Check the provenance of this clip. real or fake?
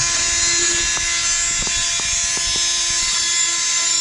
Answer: real